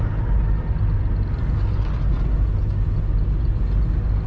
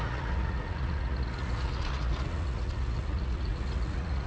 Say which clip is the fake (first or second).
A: second